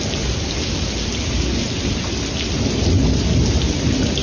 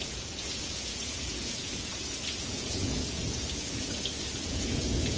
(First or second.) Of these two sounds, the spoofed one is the second